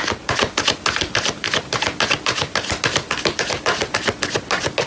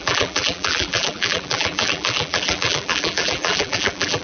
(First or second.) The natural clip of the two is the first